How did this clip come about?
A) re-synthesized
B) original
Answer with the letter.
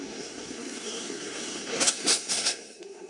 A